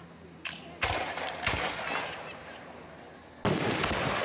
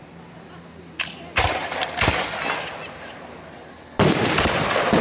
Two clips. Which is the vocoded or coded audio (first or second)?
second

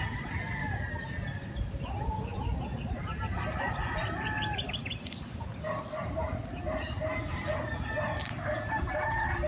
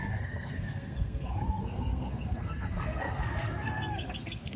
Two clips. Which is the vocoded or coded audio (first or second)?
second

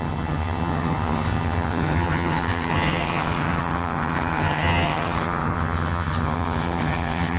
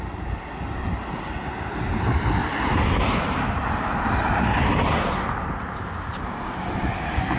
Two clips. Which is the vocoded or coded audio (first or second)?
first